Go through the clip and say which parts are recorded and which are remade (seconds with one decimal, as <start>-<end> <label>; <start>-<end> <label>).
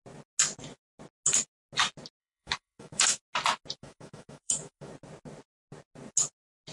0.0-2.2 recorded; 2.2-3.2 remade; 3.2-3.8 recorded; 3.8-4.9 remade; 4.9-6.7 recorded